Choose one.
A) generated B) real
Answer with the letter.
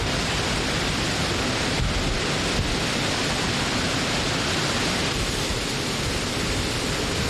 B